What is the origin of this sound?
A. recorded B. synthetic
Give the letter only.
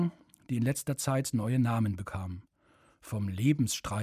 A